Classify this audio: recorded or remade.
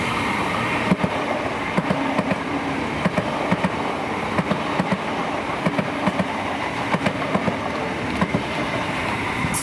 recorded